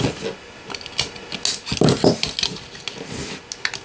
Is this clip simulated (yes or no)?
no